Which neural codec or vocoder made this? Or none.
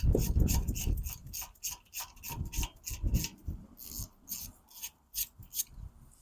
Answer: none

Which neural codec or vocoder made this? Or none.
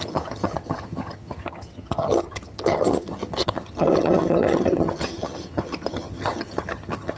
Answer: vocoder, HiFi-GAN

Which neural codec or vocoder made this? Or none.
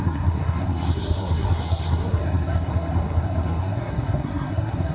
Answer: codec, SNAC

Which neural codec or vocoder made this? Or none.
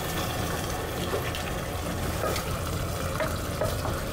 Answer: none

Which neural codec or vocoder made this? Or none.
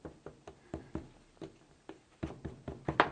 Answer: none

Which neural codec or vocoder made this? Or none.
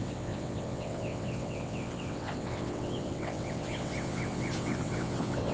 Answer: vocoder, WaveNeXt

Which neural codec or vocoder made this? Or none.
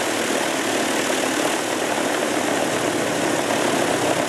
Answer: none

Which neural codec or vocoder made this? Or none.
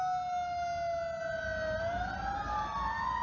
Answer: none